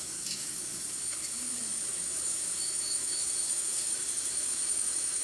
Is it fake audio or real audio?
fake